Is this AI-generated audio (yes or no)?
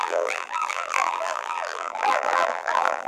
yes